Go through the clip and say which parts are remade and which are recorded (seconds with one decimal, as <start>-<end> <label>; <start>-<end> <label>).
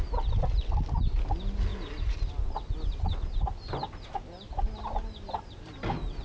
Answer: 0.0-6.2 recorded